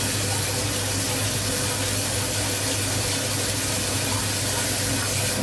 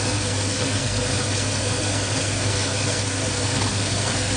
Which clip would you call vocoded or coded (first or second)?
second